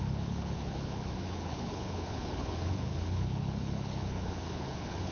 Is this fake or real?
fake